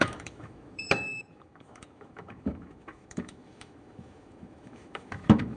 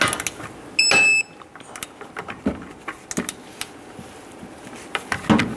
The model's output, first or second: first